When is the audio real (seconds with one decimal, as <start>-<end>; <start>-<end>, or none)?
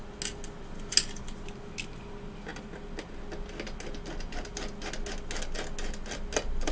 0.0-6.7